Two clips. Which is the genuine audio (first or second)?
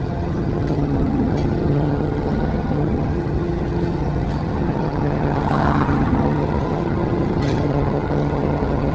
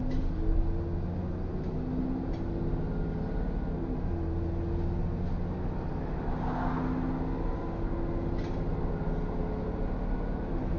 second